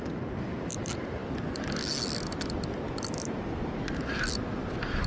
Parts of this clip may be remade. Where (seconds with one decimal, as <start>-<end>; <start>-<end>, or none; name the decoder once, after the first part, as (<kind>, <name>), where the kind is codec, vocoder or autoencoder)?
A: none